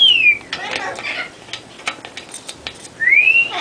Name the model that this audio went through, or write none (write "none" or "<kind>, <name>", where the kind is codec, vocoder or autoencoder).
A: none